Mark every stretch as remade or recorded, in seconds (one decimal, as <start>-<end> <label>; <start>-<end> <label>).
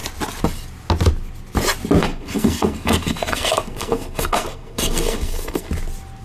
0.0-2.0 recorded; 2.0-5.7 remade; 5.7-6.2 recorded